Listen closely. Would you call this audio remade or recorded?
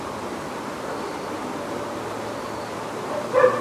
recorded